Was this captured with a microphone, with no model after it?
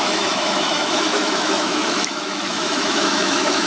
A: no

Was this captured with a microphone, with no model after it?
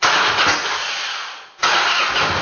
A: yes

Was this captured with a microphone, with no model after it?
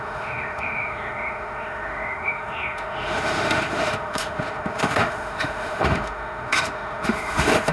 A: no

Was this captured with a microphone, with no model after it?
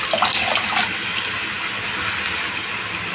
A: yes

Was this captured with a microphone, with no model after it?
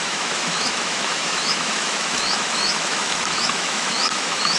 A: no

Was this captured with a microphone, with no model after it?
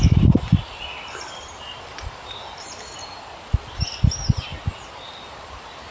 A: yes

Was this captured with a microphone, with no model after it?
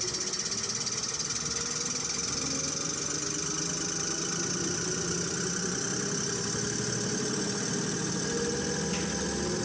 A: yes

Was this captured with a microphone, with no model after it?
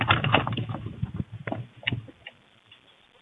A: yes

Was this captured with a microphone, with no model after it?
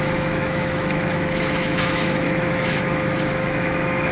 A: no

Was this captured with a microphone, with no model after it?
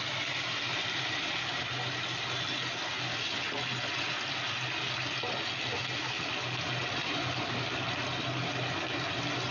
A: yes